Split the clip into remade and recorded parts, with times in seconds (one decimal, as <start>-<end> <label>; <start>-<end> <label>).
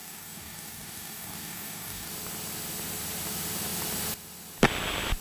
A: 0.0-2.1 remade; 2.1-5.2 recorded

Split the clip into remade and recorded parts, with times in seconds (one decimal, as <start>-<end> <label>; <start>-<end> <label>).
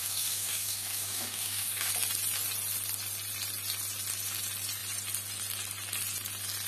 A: 0.0-1.9 remade; 1.9-6.7 recorded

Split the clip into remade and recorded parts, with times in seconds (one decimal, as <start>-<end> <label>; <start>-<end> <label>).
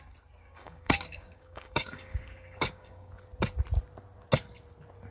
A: 0.0-0.4 recorded; 0.4-3.1 remade; 3.1-5.1 recorded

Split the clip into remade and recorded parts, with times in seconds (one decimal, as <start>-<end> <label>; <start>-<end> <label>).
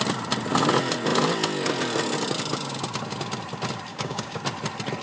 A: 0.0-3.9 recorded; 3.9-4.4 remade; 4.4-5.0 recorded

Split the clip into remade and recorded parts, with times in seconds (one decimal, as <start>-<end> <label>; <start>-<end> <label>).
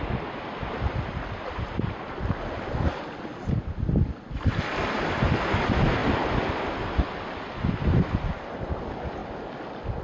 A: 0.0-10.0 recorded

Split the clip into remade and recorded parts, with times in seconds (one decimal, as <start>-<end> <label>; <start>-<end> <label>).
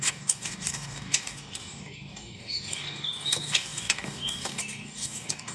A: 0.0-5.5 remade